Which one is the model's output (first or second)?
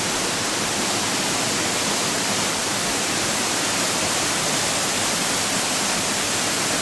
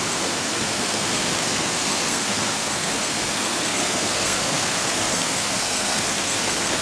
second